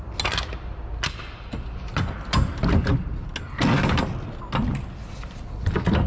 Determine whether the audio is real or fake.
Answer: real